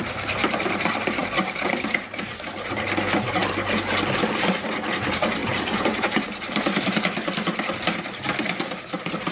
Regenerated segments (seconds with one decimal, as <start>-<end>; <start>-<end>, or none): 1.2-2.3; 5.4-6.5